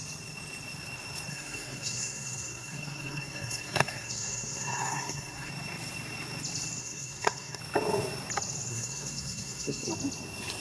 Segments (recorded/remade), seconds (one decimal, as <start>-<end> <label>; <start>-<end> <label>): 0.0-1.3 recorded; 1.3-5.5 remade; 5.5-6.8 recorded; 6.8-7.6 remade; 7.6-8.7 recorded; 8.7-9.9 remade; 9.9-10.6 recorded